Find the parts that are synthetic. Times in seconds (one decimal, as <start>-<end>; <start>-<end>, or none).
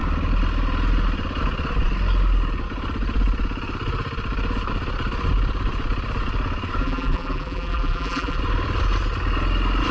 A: 6.8-8.4